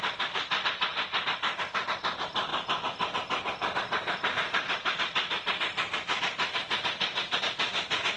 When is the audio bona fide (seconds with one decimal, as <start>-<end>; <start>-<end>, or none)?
0.0-8.2